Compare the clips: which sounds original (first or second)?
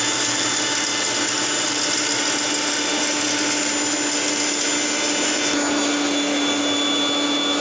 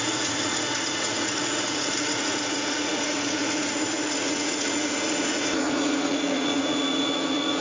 first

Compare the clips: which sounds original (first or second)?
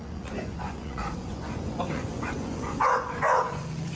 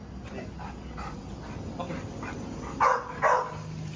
second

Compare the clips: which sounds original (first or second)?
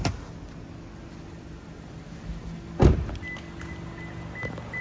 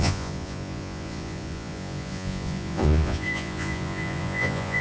first